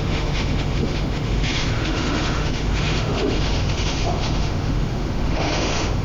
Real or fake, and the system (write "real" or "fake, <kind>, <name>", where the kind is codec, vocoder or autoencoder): fake, autoencoder, DAC-VAE